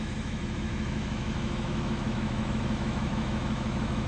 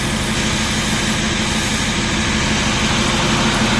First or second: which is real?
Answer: second